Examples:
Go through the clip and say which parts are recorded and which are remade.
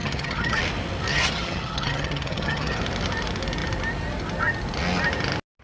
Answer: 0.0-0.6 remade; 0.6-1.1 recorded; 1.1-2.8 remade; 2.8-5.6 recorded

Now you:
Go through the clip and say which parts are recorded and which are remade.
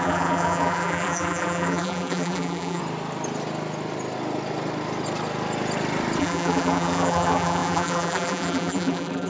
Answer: 0.0-2.8 remade; 2.8-6.2 recorded; 6.2-9.3 remade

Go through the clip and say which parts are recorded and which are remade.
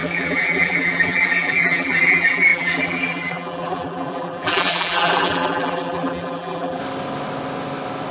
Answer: 0.0-6.8 remade; 6.8-8.1 recorded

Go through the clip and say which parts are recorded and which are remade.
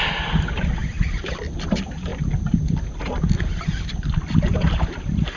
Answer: 0.0-2.1 remade; 2.1-3.1 recorded; 3.1-5.4 remade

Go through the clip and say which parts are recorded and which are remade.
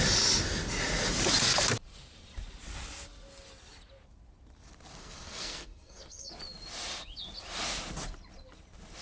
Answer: 0.0-5.0 recorded; 5.0-6.3 remade; 6.3-9.0 recorded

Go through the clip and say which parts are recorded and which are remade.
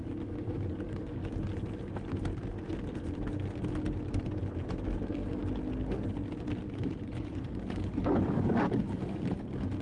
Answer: 0.0-1.2 remade; 1.2-5.0 recorded; 5.0-5.4 remade; 5.4-7.1 recorded; 7.1-9.8 remade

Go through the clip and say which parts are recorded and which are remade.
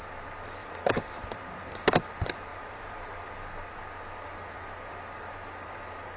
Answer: 0.0-0.6 recorded; 0.6-1.9 remade; 1.9-2.5 recorded; 2.5-3.3 remade; 3.3-6.2 recorded